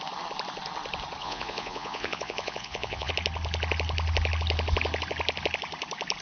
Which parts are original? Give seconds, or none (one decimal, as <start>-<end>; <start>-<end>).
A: 0.0-1.2; 3.1-6.2